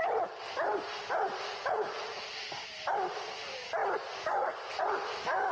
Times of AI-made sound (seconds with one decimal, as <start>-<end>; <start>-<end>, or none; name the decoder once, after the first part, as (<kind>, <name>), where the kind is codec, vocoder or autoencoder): 1.5-2.2 (vocoder, Vocos)